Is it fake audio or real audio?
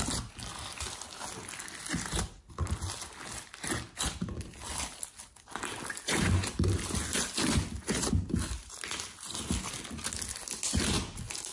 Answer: real